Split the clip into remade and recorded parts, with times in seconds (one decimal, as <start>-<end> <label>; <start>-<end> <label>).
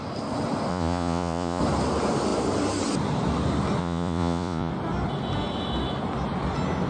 0.0-0.7 recorded; 0.7-1.6 remade; 1.6-3.8 recorded; 3.8-4.7 remade; 4.7-6.9 recorded